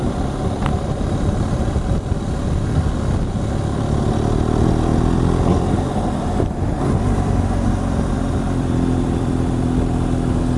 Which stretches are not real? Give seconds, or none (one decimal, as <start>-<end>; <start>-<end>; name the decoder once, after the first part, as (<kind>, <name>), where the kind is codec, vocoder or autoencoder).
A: 0.7-2.6 (vocoder, BigVGAN v2); 4.9-9.6